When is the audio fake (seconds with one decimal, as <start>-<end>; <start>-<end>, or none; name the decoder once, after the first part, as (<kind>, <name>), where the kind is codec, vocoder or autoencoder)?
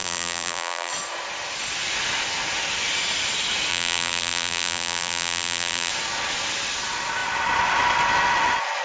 0.0-0.9 (vocoder, BigVGAN v2); 3.7-5.9